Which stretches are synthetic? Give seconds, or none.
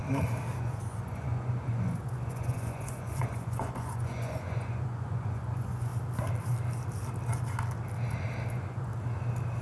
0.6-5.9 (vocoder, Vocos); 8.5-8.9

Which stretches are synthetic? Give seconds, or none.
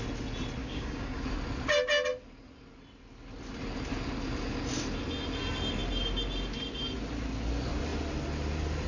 0.6-1.2 (codec, DAC)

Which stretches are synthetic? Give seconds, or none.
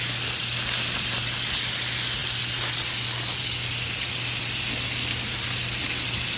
none